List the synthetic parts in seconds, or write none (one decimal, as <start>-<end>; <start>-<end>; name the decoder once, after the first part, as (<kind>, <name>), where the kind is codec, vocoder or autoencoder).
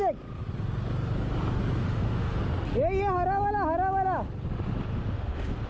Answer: 1.8-2.4 (autoencoder, DAC-VAE); 4.9-5.7